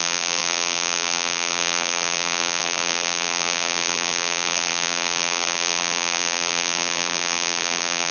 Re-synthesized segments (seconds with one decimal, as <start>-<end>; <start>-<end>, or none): 0.0-8.1